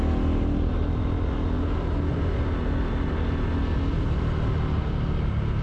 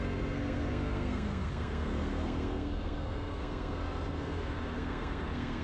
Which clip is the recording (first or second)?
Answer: first